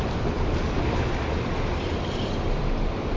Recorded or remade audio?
recorded